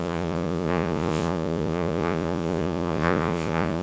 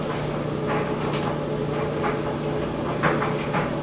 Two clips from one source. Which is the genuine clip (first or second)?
second